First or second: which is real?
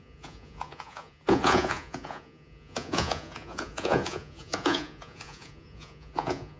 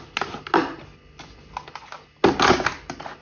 second